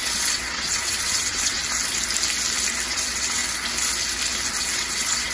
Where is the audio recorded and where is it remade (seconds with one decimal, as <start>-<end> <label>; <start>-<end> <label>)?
0.0-1.6 remade; 1.6-2.9 recorded; 2.9-3.4 remade; 3.4-4.6 recorded; 4.6-5.3 remade